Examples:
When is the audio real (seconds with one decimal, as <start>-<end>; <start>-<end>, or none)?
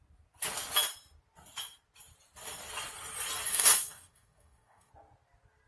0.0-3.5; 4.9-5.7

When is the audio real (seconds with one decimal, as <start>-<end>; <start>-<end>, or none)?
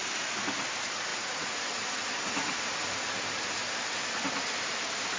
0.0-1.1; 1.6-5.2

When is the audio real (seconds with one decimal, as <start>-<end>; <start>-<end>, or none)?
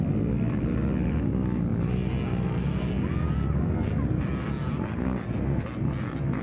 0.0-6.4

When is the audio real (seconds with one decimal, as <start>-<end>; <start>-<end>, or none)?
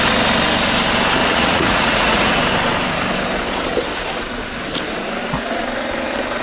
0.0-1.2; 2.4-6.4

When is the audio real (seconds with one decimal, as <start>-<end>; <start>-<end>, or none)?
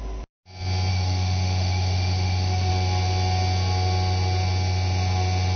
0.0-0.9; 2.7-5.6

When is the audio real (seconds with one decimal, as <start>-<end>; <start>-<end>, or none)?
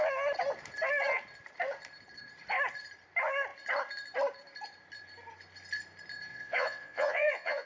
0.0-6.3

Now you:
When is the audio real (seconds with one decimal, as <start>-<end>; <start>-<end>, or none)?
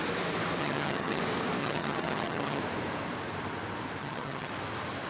0.0-0.6; 1.2-1.6; 2.6-4.0; 4.5-5.1